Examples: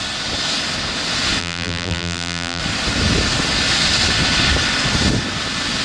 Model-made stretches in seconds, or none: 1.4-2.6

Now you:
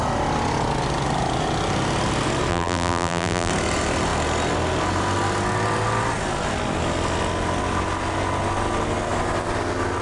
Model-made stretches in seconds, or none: 2.5-3.5

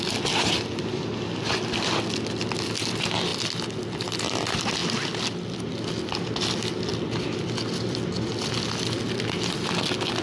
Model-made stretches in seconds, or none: none

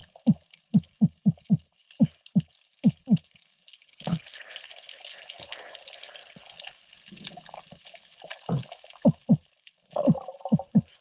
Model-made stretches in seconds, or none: 3.9-4.6